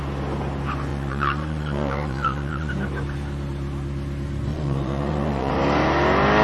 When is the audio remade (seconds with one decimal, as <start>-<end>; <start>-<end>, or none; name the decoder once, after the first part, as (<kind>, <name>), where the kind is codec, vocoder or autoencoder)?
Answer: 0.9-2.7 (vocoder, Vocos); 4.5-5.5